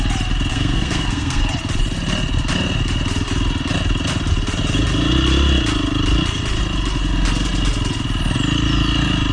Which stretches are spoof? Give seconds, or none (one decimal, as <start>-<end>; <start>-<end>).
0.5-1.4